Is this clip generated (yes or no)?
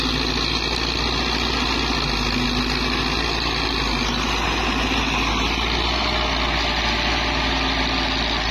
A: no